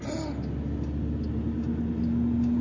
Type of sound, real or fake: real